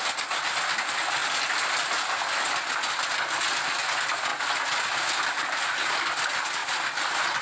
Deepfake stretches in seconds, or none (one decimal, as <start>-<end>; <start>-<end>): none